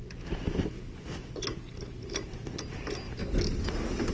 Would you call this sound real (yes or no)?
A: yes